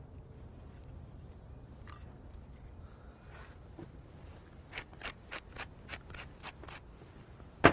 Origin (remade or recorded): recorded